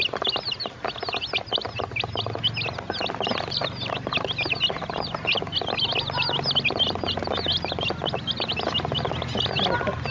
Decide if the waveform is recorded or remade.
recorded